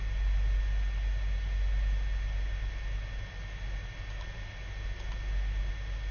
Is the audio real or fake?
real